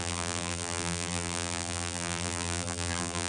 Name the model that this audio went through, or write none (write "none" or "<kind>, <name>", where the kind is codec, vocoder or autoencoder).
vocoder, BigVGAN v2